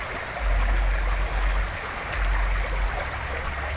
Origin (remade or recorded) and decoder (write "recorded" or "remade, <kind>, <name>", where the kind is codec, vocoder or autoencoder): recorded